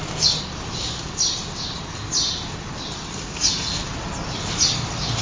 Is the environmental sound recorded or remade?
recorded